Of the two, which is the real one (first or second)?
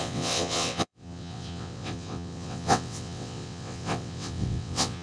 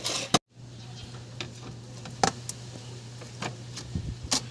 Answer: second